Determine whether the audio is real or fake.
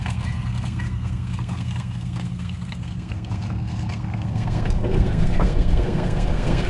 fake